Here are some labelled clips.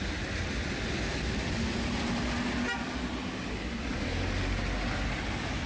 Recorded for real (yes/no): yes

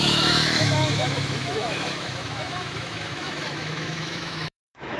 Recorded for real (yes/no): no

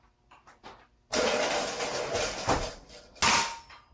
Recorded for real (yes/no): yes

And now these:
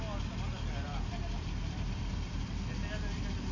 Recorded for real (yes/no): yes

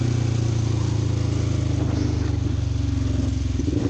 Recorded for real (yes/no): yes